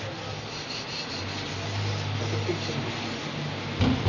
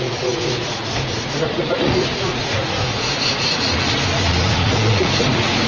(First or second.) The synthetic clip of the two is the second